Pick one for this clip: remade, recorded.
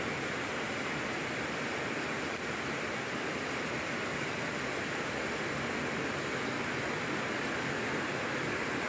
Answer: recorded